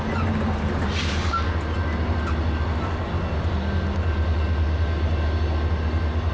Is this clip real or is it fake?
real